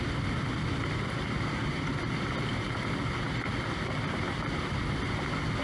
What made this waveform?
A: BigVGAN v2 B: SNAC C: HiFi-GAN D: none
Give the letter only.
D